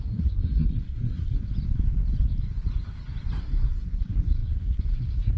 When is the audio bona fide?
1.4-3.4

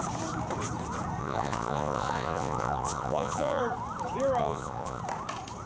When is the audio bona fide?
0.0-1.2; 3.6-4.4; 5.0-5.7